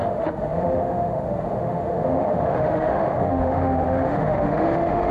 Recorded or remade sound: remade